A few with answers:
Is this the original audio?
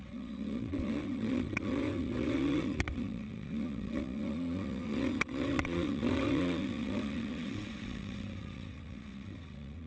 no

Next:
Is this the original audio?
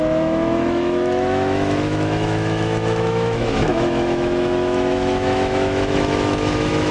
no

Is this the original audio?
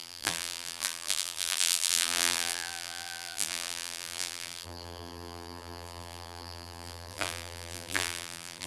no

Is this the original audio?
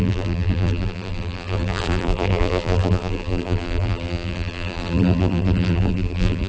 no